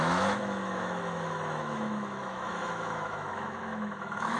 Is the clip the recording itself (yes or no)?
no